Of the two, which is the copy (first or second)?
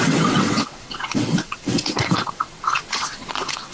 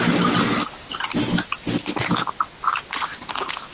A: first